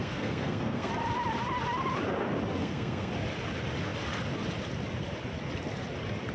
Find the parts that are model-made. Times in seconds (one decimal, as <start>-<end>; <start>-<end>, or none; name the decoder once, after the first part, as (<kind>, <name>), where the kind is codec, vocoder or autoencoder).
0.0-0.9 (codec, SNAC); 2.6-3.1